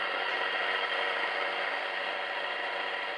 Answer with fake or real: real